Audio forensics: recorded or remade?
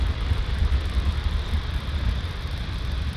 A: recorded